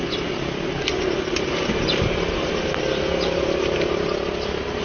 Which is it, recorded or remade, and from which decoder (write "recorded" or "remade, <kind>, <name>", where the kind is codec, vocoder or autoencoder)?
recorded